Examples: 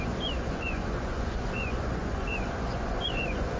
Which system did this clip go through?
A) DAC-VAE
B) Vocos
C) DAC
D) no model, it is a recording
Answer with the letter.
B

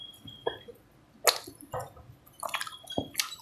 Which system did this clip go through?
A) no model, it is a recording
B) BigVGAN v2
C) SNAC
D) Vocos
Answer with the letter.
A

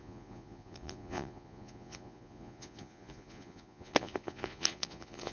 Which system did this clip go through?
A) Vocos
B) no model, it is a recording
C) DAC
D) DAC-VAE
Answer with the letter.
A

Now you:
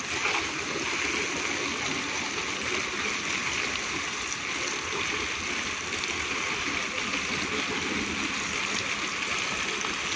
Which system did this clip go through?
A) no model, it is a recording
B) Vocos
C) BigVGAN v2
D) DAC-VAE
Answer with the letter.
A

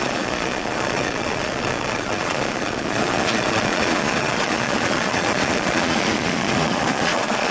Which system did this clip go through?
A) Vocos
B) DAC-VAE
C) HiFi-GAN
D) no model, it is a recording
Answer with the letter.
A